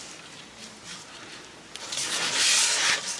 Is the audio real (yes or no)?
yes